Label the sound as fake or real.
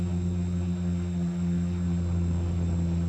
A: real